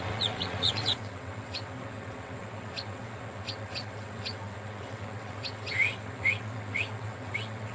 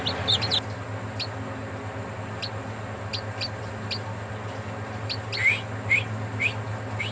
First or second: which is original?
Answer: second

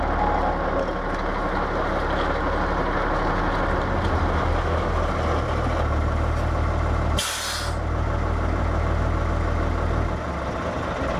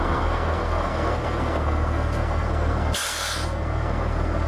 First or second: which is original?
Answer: first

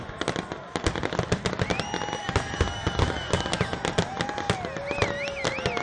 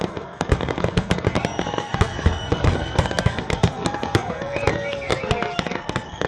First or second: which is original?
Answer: first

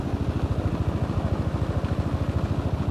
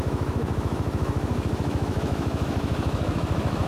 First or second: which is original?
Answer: first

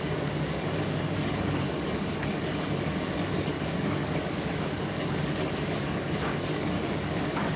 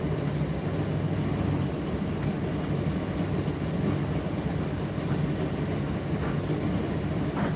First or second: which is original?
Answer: second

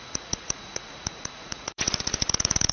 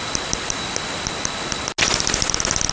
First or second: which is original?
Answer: second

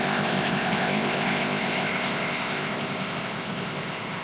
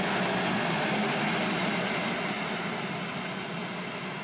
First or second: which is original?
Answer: second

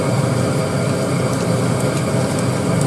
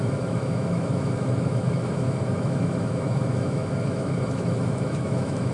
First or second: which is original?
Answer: first